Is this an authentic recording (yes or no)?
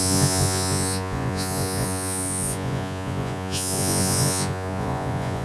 no